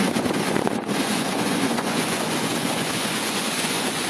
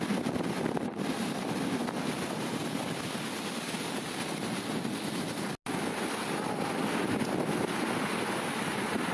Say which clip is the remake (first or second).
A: first